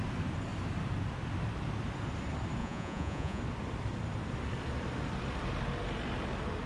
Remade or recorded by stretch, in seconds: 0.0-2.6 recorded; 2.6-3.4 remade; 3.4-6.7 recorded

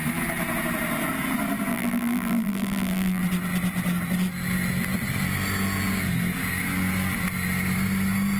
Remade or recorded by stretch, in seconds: 0.0-1.7 recorded; 1.7-3.2 remade; 3.2-8.4 recorded